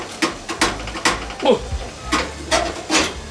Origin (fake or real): real